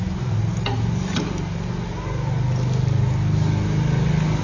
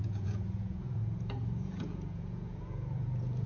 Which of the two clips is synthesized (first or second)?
second